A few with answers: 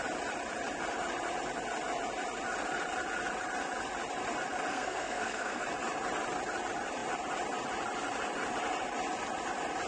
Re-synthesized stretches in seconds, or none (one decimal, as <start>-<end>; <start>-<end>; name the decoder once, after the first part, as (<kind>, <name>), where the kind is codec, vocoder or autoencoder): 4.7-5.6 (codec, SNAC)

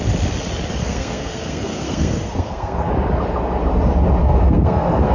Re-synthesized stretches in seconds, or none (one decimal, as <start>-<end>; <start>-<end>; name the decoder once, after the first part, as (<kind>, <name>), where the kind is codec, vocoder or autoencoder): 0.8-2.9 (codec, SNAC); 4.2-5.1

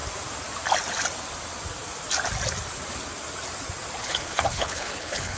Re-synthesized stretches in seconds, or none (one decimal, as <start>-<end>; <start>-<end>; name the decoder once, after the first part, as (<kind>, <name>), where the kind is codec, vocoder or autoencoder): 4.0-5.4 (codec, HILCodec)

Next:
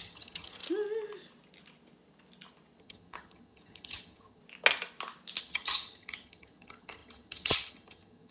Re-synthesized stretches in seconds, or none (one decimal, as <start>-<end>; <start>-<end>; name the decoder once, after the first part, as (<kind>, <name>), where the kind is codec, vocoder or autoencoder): 0.0-0.6 (vocoder, HiFi-GAN); 2.8-4.4; 5.4-8.3

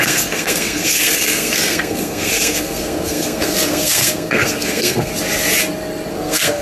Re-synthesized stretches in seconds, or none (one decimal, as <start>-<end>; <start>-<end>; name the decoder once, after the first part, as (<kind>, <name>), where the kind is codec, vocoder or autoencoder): 0.0-5.1 (codec, SNAC); 6.1-6.6

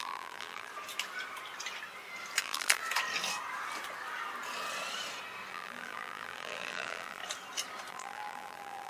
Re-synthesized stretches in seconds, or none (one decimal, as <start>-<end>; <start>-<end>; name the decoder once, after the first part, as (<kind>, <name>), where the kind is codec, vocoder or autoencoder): 0.0-0.7 (vocoder, BigVGAN v2); 2.4-2.8; 5.5-7.2; 7.9-8.9

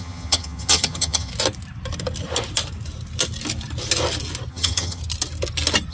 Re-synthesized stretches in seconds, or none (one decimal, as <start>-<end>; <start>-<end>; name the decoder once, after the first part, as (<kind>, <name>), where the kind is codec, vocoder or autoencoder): 0.0-1.3 (vocoder, HiFi-GAN); 4.5-5.0